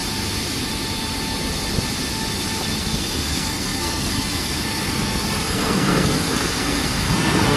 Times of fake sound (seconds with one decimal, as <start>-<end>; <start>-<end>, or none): 2.8-7.6